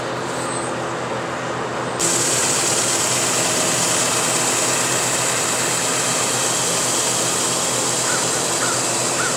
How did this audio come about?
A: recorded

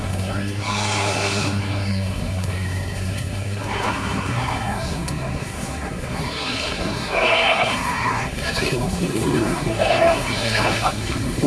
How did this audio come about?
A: remade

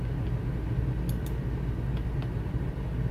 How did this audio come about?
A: recorded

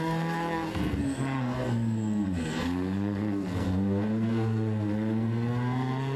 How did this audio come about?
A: remade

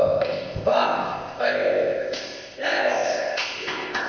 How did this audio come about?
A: remade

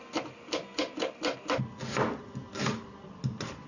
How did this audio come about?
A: recorded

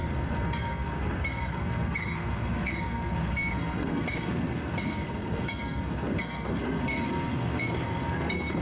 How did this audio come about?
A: remade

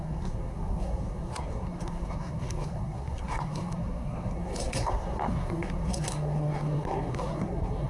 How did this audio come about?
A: remade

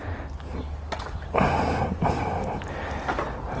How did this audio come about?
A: recorded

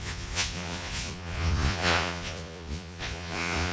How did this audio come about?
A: remade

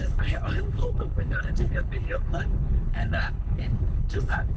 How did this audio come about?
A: remade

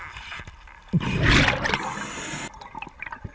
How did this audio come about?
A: recorded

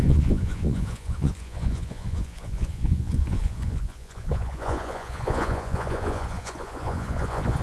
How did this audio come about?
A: remade